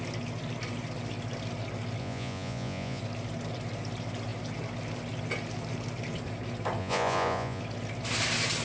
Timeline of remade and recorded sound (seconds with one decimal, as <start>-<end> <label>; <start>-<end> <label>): 0.0-2.0 recorded; 2.0-3.0 remade; 3.0-6.8 recorded; 6.8-7.6 remade; 7.6-8.6 recorded